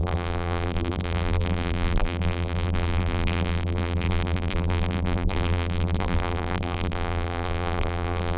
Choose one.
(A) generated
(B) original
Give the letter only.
A